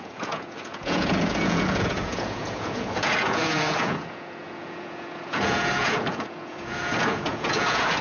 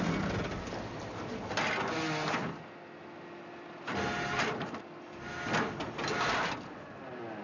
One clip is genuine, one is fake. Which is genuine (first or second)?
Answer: second